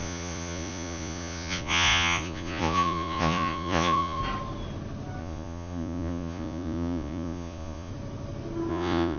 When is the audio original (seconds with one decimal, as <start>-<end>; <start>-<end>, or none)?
4.2-5.2; 7.9-8.7